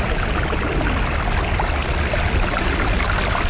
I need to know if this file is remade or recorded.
recorded